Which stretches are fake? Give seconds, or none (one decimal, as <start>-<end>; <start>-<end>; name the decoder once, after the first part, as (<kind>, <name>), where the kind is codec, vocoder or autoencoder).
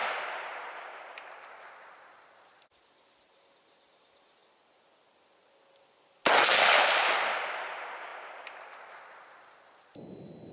2.4-4.4 (vocoder, BigVGAN v2); 6.8-8.1; 10.1-10.5